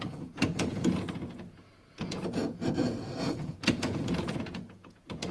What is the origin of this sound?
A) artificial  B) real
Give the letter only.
A